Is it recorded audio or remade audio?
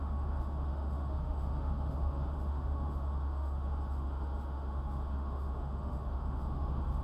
remade